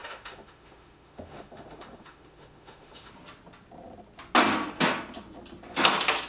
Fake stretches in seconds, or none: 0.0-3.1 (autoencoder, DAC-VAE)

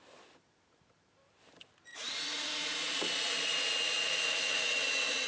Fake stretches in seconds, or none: 1.9-5.3 (vocoder, Vocos)

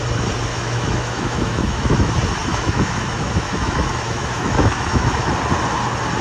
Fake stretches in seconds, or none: 0.5-2.1 (autoencoder, DAC-VAE); 2.5-5.3

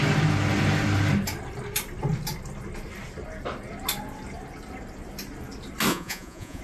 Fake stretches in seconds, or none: 5.9-6.6 (vocoder, Vocos)

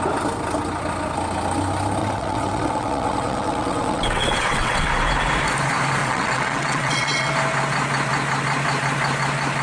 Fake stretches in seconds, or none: 2.0-4.9 (vocoder, WaveNeXt); 6.0-7.3